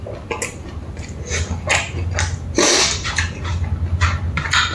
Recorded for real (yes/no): yes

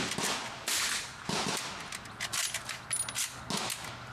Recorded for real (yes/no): yes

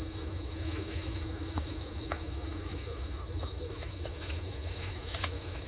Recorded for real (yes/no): no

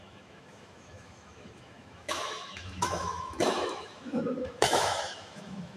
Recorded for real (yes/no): no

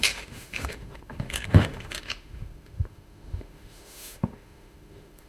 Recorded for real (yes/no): no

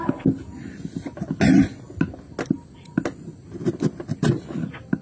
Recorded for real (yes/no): yes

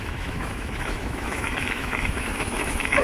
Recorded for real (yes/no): no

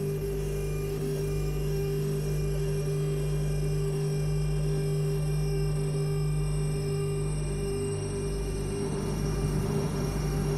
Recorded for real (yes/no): no